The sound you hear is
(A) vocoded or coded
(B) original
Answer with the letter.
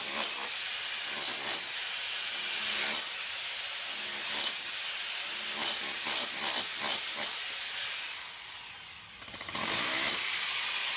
B